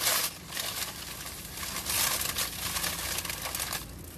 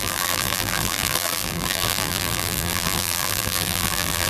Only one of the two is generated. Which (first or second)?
second